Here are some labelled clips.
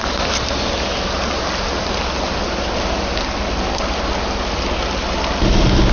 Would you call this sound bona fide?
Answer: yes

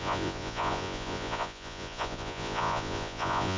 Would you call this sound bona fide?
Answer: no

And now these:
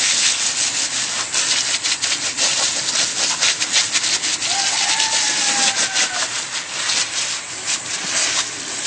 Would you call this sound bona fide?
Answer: yes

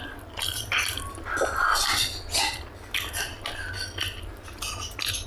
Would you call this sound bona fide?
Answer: yes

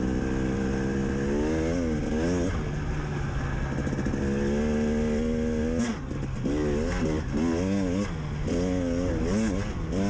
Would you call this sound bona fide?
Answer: yes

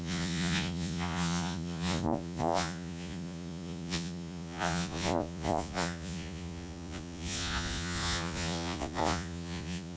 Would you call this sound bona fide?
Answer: no